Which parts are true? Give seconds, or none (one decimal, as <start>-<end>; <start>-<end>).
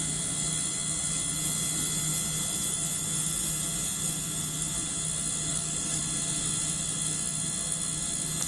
0.0-5.5; 6.0-8.5